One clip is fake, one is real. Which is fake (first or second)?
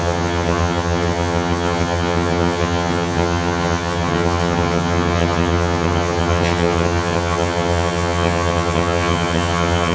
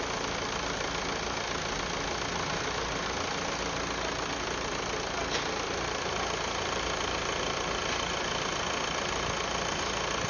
first